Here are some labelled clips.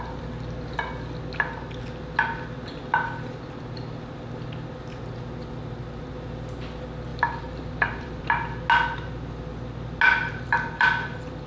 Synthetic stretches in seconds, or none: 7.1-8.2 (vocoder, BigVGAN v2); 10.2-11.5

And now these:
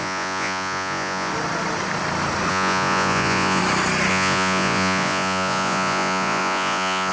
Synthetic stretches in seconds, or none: 0.0-1.3 (vocoder, Vocos); 2.5-3.6; 4.1-7.1

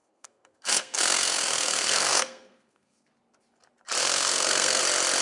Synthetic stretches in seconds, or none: 0.0-3.1 (codec, SNAC); 4.0-4.8

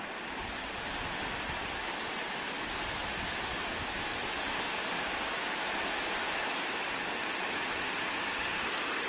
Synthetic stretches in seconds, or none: 0.0-0.4 (codec, DAC); 3.5-4.1; 4.7-5.7; 8.4-9.1